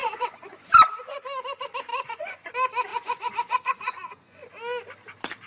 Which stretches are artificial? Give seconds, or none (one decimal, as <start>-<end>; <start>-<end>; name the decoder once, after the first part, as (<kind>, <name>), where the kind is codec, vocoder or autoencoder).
0.0-0.7 (vocoder, Vocos); 1.9-2.5; 2.9-4.5